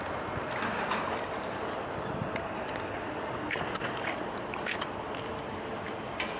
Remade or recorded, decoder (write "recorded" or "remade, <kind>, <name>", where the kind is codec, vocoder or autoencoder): recorded